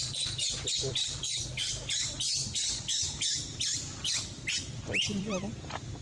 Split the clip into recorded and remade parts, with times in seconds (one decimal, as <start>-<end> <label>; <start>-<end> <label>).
0.0-6.0 remade